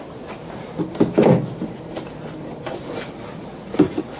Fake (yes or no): no